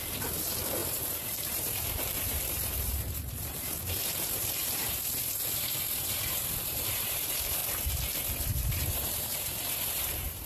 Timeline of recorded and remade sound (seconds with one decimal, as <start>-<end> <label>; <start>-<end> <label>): 0.0-7.6 remade; 7.6-8.5 recorded; 8.5-10.4 remade